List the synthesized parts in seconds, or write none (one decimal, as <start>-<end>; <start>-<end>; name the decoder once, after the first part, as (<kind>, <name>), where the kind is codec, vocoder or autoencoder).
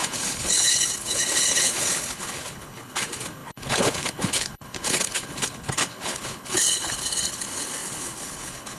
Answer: 0.0-8.8 (codec, HILCodec)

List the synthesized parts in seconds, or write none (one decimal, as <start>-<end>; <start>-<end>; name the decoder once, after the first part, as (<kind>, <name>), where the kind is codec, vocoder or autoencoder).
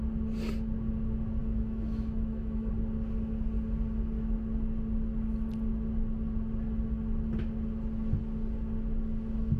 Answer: 1.4-2.7 (autoencoder, DAC-VAE)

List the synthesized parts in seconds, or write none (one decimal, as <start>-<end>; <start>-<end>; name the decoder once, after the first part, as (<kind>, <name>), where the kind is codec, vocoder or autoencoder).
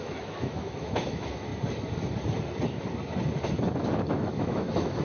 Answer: 0.0-1.5 (autoencoder, DAC-VAE); 4.1-5.0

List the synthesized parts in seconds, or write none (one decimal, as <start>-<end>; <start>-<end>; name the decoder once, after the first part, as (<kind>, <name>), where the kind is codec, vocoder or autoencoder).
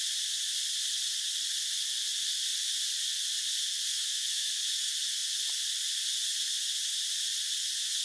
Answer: 3.9-4.5 (autoencoder, DAC-VAE)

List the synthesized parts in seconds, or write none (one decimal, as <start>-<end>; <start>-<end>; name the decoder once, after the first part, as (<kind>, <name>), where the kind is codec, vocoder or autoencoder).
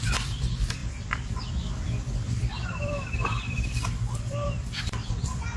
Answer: 0.0-5.6 (vocoder, BigVGAN v2)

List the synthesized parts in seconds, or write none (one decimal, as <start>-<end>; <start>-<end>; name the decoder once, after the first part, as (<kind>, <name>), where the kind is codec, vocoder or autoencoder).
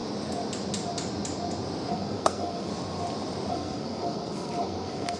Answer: 1.9-2.7 (codec, SNAC); 3.5-5.2